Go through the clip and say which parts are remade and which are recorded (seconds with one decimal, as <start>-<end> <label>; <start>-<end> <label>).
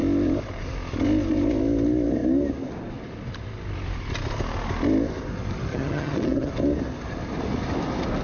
0.0-5.7 recorded; 5.7-6.5 remade; 6.5-8.2 recorded